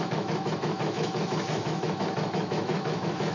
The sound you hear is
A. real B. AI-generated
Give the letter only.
B